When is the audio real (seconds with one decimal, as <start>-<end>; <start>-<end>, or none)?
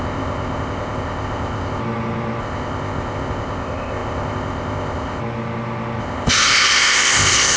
1.8-2.4; 5.2-6.0